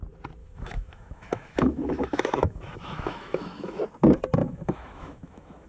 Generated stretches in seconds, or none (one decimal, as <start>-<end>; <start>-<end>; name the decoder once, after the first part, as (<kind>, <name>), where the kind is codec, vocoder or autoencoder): 0.4-3.8 (autoencoder, DAC-VAE); 4.4-5.7